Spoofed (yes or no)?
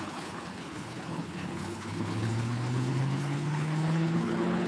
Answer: yes